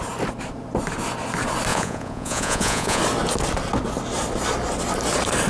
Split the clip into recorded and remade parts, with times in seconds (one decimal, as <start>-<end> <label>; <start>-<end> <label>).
0.0-1.7 recorded; 1.7-3.0 remade; 3.0-5.5 recorded